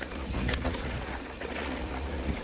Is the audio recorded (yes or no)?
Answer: no